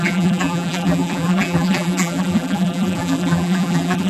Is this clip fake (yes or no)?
yes